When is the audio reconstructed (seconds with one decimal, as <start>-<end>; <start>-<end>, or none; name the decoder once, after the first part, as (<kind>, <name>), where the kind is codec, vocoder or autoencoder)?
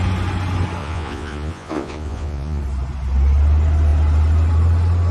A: 0.8-2.6 (vocoder, Vocos)